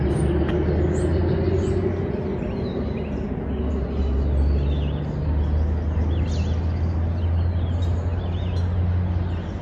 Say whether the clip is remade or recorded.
recorded